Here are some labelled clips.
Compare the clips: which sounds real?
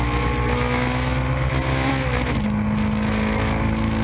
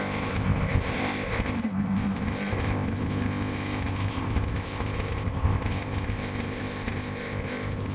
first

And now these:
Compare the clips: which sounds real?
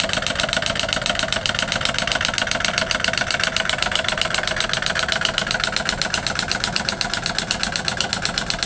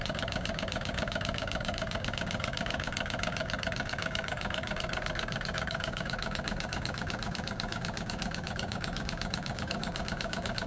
first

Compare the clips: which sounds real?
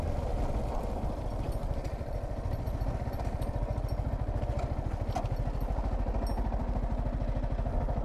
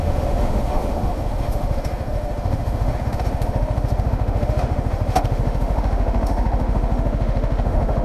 first